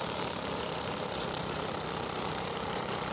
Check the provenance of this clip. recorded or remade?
remade